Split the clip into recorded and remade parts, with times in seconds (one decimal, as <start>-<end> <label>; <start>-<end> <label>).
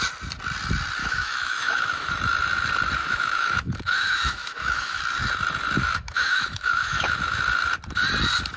0.0-1.0 recorded; 1.0-2.1 remade; 2.1-3.0 recorded; 3.0-5.0 remade; 5.0-5.8 recorded; 5.8-7.4 remade; 7.4-8.6 recorded